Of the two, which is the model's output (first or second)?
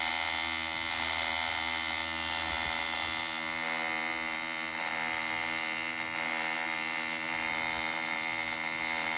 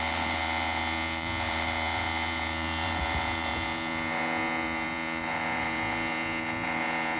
second